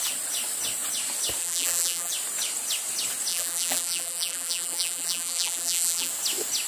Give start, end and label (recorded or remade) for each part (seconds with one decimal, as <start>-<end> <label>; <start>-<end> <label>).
0.0-1.4 recorded; 1.4-2.1 remade; 2.1-3.3 recorded; 3.3-6.1 remade; 6.1-6.7 recorded